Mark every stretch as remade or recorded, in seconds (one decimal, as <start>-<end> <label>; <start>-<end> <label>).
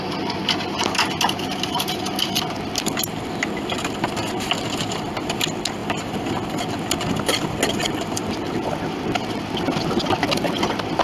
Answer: 0.0-11.0 recorded